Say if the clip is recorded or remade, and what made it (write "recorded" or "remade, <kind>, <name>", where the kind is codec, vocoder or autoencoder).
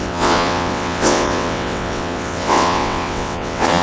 remade, vocoder, WaveNeXt